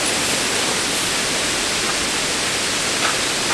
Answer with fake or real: real